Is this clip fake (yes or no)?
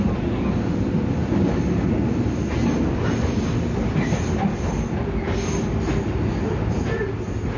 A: no